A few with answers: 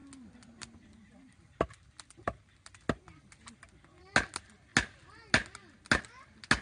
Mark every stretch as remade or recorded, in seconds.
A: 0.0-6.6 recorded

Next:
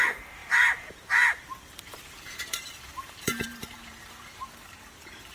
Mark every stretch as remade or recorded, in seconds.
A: 0.0-5.3 remade

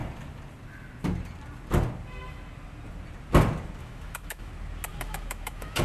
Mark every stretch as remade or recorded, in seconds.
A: 0.0-3.8 recorded; 3.8-4.5 remade; 4.5-4.9 recorded; 4.9-5.8 remade

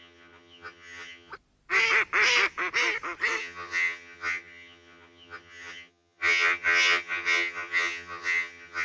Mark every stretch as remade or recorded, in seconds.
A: 0.0-1.3 remade; 1.3-3.4 recorded; 3.4-8.8 remade

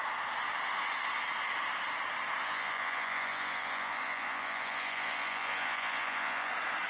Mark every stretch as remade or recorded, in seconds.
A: 0.0-2.4 recorded; 2.4-6.5 remade; 6.5-6.9 recorded